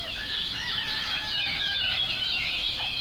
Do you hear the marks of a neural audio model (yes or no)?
yes